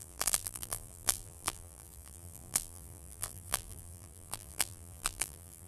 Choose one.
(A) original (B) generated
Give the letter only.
B